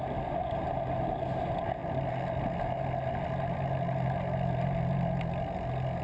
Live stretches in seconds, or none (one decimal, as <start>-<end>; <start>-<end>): 0.0-6.0